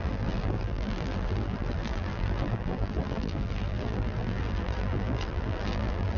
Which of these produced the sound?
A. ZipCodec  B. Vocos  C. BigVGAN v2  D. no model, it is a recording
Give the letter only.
C